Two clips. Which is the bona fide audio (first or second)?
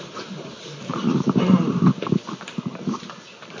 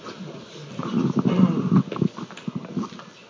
second